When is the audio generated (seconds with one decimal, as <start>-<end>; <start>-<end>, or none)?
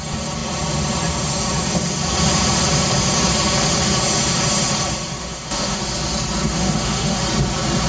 5.2-5.8; 6.5-7.2